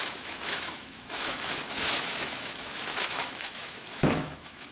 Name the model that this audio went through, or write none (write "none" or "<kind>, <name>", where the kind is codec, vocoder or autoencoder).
autoencoder, DAC-VAE